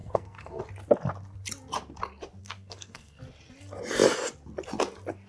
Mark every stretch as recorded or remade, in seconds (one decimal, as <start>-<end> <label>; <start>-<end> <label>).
0.0-0.6 remade; 0.6-2.4 recorded; 2.4-3.2 remade; 3.2-5.3 recorded